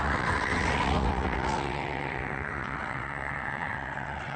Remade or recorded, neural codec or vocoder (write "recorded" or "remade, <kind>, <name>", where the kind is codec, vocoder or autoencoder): remade, vocoder, WaveNeXt